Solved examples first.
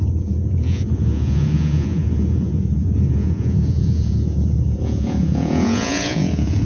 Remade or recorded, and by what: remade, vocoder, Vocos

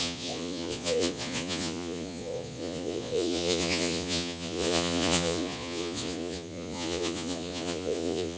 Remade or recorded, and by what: remade, vocoder, Vocos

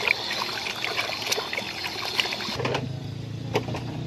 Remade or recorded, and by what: recorded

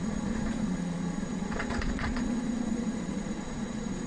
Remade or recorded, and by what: remade, vocoder, Vocos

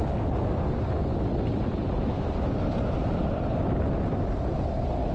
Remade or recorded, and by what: recorded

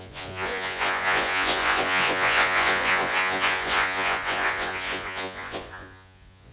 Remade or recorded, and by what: remade, vocoder, Vocos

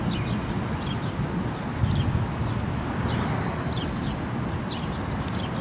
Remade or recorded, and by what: recorded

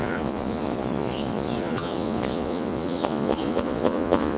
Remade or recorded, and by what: remade, vocoder, Vocos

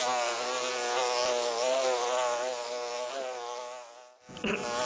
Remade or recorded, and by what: recorded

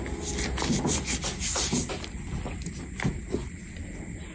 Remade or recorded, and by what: recorded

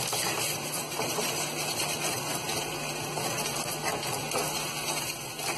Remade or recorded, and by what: recorded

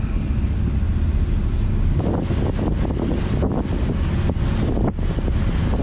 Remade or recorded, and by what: recorded